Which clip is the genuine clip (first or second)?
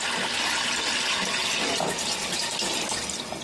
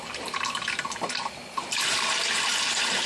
first